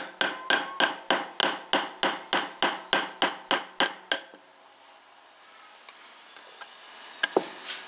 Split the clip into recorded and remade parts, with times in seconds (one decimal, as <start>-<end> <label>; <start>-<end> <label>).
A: 0.0-7.9 recorded